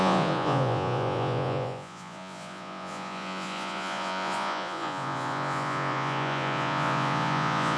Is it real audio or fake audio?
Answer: fake